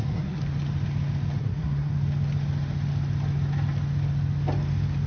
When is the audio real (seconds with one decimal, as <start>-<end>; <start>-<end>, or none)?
0.4-1.4; 1.9-5.1